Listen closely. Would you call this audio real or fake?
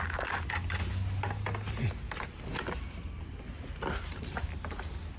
real